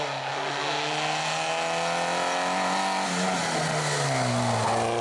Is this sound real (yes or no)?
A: yes